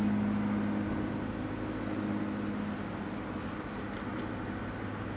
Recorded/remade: recorded